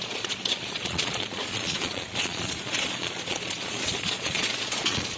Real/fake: fake